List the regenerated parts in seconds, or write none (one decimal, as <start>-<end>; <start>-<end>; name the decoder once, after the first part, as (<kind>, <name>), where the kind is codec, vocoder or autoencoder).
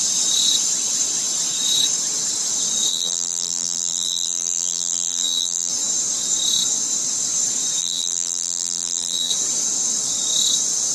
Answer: 2.9-5.7 (vocoder, BigVGAN v2); 7.8-9.3